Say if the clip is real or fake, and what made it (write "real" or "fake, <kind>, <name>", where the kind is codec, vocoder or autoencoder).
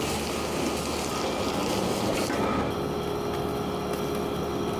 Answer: real